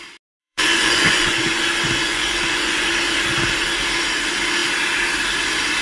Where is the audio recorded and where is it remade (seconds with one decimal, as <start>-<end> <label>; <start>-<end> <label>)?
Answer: 0.0-0.4 recorded; 0.4-1.6 remade; 1.6-2.0 recorded; 2.0-2.9 remade; 2.9-5.8 recorded